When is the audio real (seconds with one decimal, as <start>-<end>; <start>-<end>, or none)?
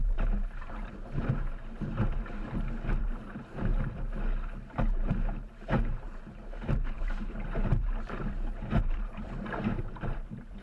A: 2.4-3.0; 3.7-4.8